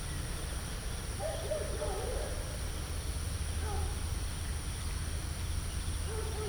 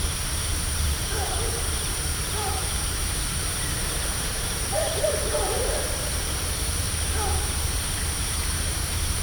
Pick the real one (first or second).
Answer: first